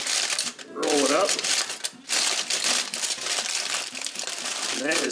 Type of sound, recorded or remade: recorded